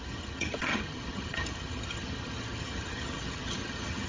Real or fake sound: fake